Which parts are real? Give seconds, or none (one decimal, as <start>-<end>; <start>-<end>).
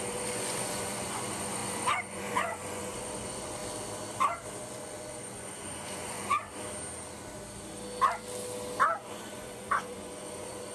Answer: 3.6-4.6; 6.4-9.0